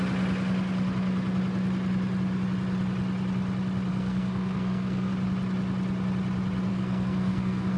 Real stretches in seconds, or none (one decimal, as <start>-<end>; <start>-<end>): 0.0-3.9; 5.1-6.7